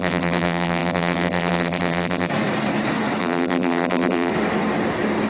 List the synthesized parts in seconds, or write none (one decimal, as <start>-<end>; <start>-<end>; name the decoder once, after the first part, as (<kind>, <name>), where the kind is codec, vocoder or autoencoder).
0.0-2.3 (vocoder, BigVGAN v2); 3.2-4.3